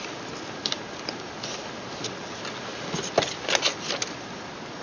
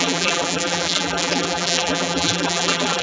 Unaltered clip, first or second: first